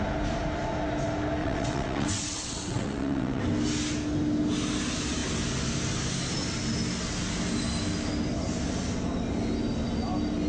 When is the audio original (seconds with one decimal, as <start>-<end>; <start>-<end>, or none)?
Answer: 0.0-1.4; 3.4-10.5